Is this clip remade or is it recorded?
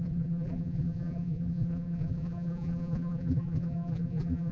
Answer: remade